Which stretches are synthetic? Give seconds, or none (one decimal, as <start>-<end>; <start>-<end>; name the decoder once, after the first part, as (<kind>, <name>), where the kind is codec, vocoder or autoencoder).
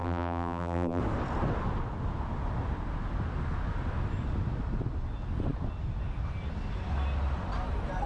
0.0-1.0 (vocoder, BigVGAN v2)